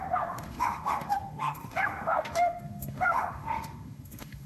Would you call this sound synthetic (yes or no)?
yes